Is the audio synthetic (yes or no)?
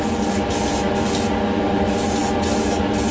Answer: no